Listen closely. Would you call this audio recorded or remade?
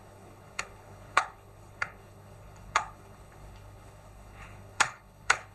remade